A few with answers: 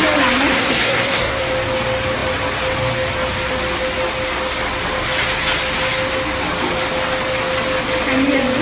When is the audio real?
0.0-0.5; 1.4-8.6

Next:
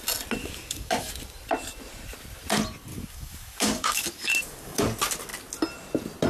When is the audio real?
0.0-0.4; 1.1-2.9; 4.8-6.3